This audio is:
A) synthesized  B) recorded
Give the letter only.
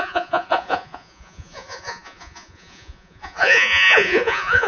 A